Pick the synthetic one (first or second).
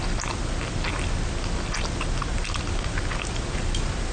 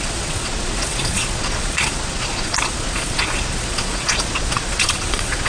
second